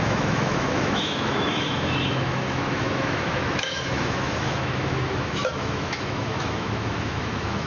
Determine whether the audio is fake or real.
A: fake